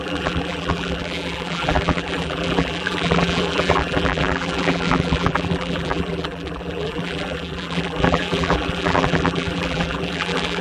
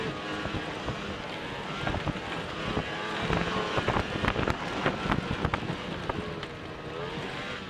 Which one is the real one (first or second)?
second